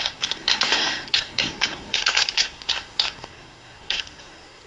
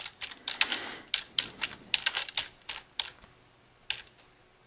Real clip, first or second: second